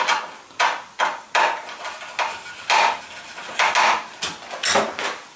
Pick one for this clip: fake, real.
real